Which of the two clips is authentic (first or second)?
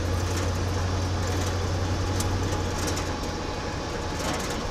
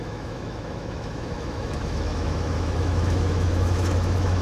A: first